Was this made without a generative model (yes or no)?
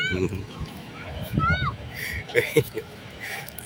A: no